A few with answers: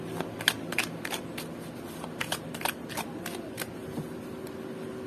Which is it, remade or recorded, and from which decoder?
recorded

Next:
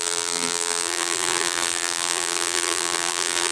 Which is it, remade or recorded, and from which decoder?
remade, vocoder, BigVGAN v2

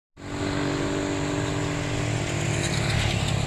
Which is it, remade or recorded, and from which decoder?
recorded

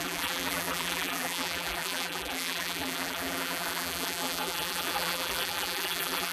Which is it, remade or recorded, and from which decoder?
remade, vocoder, BigVGAN v2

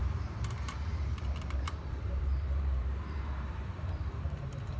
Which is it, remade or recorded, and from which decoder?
remade, vocoder, BigVGAN v2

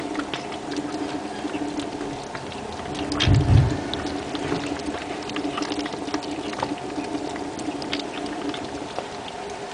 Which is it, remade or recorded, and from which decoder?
recorded